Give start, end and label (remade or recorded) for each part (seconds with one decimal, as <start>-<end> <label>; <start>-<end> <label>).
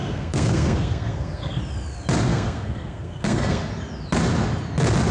0.0-1.6 remade; 1.6-2.3 recorded; 2.3-3.7 remade; 3.7-5.1 recorded